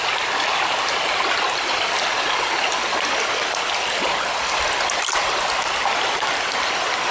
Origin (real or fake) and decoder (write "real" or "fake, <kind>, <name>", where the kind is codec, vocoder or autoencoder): real